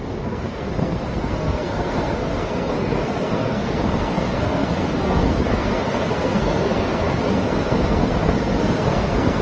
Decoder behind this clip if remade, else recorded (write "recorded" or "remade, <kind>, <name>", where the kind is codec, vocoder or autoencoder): remade, codec, SNAC